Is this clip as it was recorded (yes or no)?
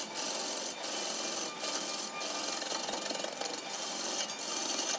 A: yes